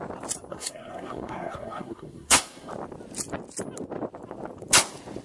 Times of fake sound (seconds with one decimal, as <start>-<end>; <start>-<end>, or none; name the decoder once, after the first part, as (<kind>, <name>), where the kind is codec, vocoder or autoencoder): 0.5-2.7 (codec, SNAC)